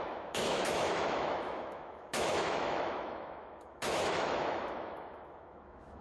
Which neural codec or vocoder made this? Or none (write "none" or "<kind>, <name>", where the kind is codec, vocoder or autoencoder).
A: autoencoder, DAC-VAE